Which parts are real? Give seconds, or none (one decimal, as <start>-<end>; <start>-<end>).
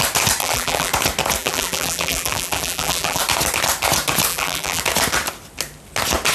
0.0-0.4; 0.9-1.4; 3.2-4.3; 4.8-6.3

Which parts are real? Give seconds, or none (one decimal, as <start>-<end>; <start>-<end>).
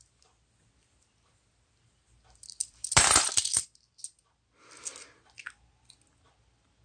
0.0-2.6; 3.3-6.8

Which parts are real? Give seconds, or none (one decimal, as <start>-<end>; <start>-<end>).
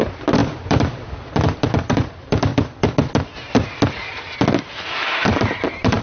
2.5-4.9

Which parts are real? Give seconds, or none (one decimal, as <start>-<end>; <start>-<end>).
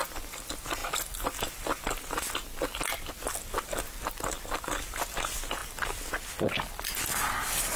0.0-7.8